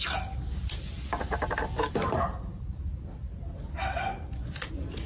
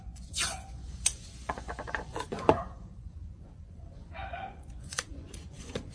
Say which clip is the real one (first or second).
first